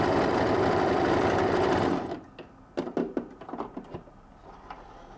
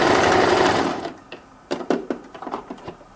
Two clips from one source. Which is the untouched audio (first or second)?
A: first